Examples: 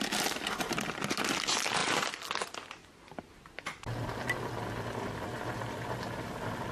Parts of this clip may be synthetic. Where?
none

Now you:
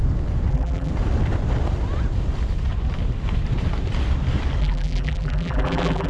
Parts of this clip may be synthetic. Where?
0.5-0.9 (vocoder, BigVGAN v2); 4.6-6.1